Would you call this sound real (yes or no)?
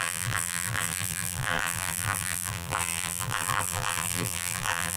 no